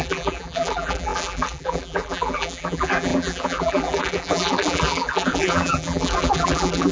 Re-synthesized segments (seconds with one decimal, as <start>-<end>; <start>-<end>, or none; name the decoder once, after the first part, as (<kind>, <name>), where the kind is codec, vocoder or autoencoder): 0.0-6.9 (vocoder, BigVGAN v2)